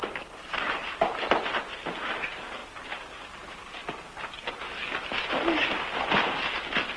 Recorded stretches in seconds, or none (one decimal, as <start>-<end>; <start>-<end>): 1.4-7.0